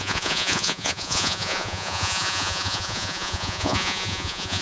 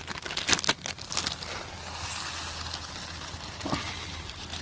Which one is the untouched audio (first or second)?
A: second